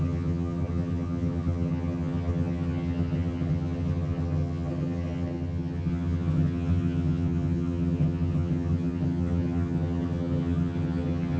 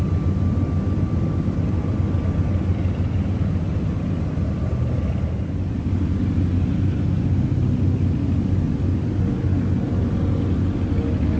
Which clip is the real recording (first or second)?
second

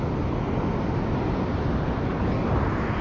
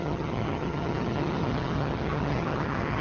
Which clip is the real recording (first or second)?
first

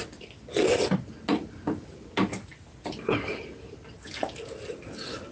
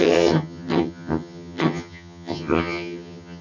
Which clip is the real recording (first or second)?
first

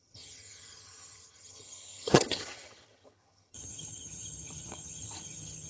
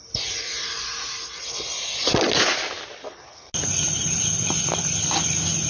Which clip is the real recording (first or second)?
second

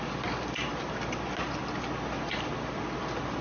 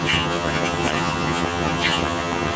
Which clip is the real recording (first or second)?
first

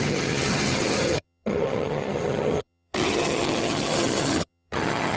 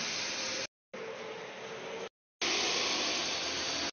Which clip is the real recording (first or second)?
second